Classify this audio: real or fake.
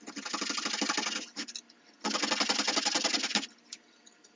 real